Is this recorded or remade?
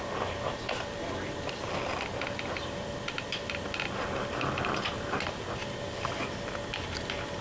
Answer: recorded